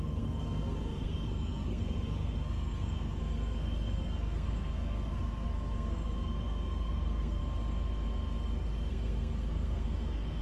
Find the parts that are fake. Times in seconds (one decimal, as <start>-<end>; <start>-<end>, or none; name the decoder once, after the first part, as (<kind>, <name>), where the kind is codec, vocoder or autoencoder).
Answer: 0.0-7.4 (codec, SNAC); 8.9-10.4